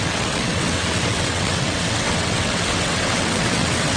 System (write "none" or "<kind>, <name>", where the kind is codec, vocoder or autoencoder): vocoder, WaveNeXt